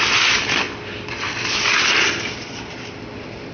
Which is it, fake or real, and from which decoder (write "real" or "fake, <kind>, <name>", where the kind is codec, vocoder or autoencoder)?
real